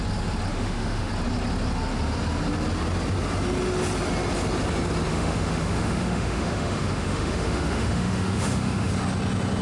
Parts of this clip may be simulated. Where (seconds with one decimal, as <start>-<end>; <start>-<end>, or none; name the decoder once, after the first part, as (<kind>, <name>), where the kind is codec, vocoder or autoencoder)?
0.5-1.1 (autoencoder, DAC-VAE); 5.1-8.9